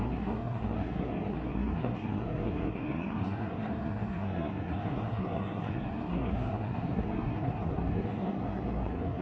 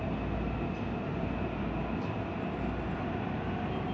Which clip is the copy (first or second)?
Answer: first